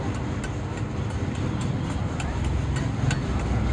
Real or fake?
real